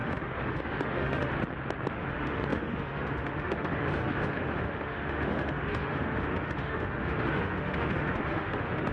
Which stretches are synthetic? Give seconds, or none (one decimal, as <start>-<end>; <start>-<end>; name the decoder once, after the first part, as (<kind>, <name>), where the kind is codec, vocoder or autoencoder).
0.0-1.3 (autoencoder, DAC-VAE); 1.9-8.9